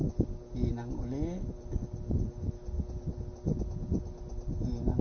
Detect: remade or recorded recorded